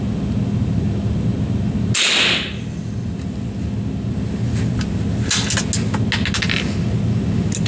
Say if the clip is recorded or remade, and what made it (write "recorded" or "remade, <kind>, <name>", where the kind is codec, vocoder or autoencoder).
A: recorded